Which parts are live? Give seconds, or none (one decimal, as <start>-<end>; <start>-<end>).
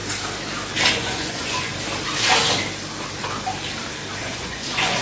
0.0-0.9; 1.7-4.2